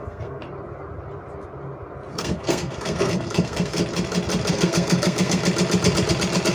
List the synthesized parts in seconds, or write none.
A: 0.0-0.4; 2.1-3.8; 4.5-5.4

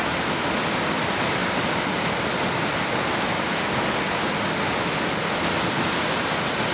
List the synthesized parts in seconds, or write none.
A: none

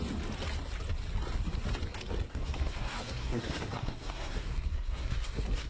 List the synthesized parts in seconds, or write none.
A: 2.3-5.7

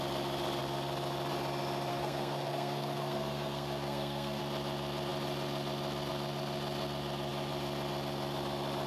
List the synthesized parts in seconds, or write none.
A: 1.9-4.4

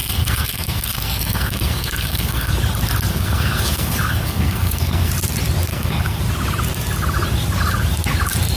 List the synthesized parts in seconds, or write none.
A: 0.0-2.5; 3.1-5.1; 5.7-6.2